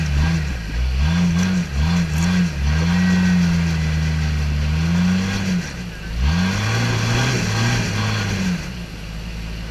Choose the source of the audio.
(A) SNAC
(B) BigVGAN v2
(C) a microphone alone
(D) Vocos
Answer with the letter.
C